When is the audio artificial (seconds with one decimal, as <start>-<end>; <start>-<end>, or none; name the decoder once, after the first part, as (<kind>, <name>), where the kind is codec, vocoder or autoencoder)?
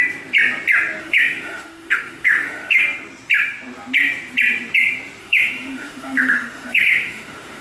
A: 1.0-2.8 (autoencoder, DAC-VAE); 5.2-7.6